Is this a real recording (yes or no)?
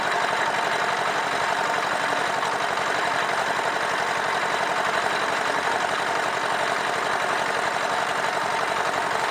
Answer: yes